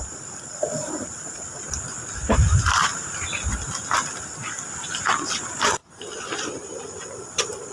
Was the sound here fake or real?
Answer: real